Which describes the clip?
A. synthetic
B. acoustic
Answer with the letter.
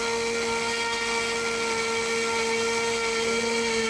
B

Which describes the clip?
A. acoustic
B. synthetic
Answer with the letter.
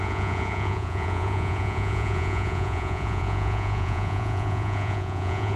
B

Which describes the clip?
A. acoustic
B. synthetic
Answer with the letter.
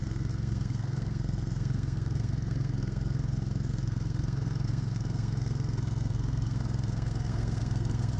B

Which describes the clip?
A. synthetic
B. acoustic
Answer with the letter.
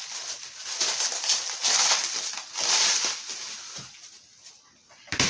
B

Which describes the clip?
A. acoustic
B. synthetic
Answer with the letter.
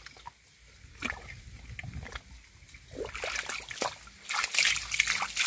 A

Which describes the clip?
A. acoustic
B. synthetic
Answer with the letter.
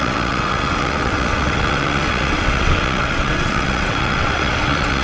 B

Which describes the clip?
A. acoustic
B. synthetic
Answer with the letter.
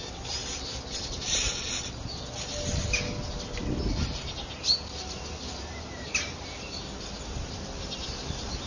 A